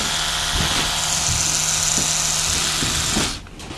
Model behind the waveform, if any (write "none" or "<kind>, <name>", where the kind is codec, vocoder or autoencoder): none